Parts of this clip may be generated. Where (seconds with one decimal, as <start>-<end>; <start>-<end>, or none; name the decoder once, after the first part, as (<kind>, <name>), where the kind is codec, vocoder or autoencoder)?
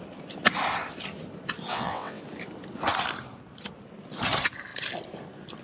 1.7-2.2 (vocoder, WaveNeXt)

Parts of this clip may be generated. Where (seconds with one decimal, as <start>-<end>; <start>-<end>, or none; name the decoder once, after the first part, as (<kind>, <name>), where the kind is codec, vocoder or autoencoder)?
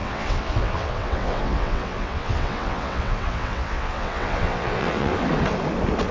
0.0-5.1 (vocoder, WaveNeXt)